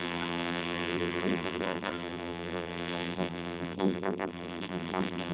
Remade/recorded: remade